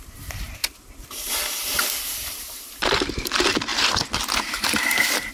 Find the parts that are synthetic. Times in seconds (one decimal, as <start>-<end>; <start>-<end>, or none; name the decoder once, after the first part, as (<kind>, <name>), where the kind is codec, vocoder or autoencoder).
0.0-3.7 (vocoder, BigVGAN v2); 4.3-5.3